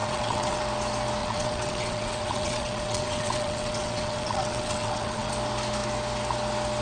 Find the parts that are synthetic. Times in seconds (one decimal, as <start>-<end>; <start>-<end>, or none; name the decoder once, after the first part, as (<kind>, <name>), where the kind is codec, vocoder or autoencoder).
0.0-0.6 (vocoder, WaveNeXt); 1.2-5.3